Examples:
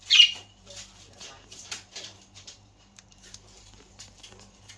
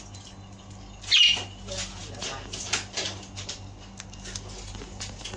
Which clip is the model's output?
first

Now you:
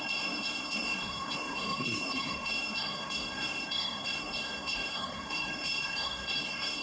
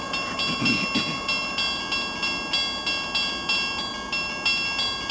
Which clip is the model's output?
first